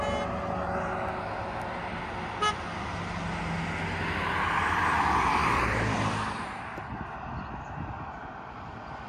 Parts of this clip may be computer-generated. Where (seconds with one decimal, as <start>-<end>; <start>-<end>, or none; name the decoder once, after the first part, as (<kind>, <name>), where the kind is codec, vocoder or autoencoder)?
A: 5.4-6.9 (vocoder, BigVGAN v2)